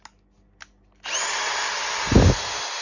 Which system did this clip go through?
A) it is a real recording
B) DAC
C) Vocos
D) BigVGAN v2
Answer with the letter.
A